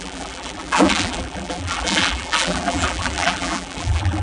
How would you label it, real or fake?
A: fake